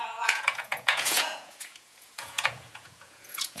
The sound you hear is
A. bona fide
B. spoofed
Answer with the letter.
B